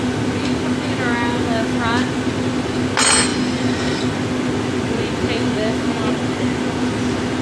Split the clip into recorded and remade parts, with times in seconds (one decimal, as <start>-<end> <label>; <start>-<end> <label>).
0.0-7.4 recorded